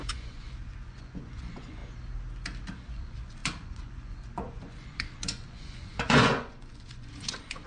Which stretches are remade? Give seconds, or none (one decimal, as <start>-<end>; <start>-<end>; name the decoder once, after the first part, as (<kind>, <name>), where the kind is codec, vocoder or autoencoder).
0.0-1.8 (vocoder, Vocos); 2.9-7.7